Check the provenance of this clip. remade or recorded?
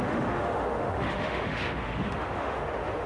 remade